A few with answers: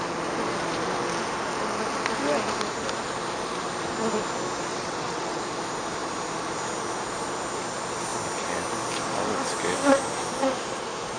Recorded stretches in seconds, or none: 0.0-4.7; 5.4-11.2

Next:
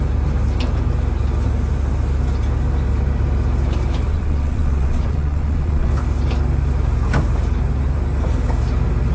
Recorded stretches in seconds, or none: 0.0-4.1; 5.9-9.1

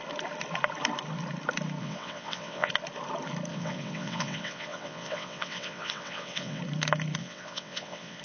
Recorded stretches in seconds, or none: 0.0-1.8; 2.7-3.5; 6.6-7.2

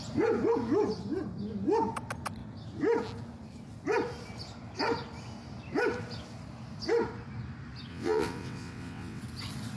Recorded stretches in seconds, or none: 0.0-7.9; 9.2-9.8

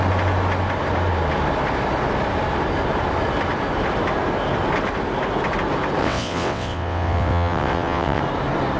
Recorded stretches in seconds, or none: 0.0-6.0; 8.2-8.8